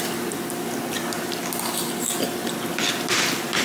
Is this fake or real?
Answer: real